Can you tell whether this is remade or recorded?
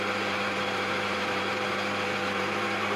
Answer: remade